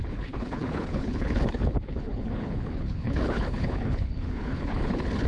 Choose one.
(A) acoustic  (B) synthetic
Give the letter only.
B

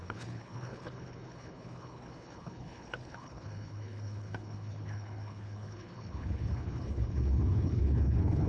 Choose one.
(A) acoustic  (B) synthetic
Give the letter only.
B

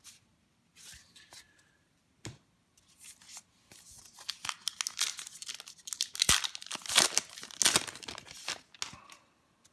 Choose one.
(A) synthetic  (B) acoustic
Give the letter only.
B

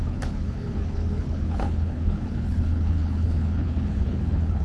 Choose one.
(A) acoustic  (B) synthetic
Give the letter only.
B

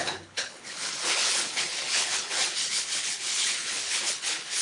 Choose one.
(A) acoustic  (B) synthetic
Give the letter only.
B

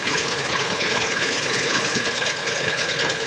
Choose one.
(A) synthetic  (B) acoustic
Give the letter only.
A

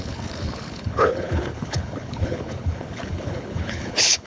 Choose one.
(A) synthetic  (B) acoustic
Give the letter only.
A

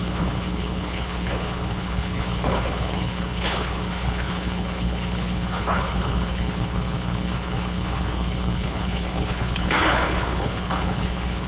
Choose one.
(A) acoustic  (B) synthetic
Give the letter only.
B